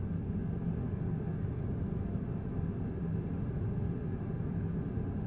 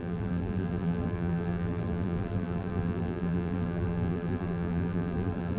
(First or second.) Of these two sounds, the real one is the first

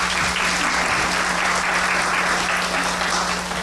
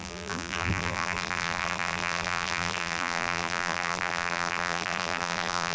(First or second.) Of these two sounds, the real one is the first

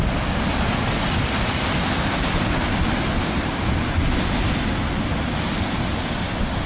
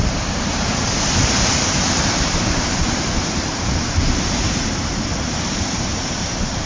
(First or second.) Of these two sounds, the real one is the first